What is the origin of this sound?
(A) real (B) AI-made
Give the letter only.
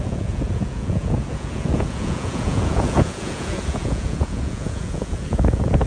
B